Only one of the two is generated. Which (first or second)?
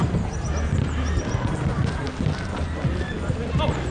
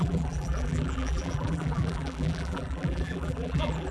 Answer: second